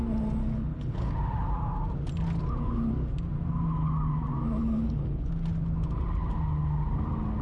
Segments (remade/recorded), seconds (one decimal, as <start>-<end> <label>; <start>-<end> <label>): 0.0-0.4 recorded; 0.4-1.1 remade; 1.1-4.6 recorded; 4.6-5.3 remade; 5.3-7.4 recorded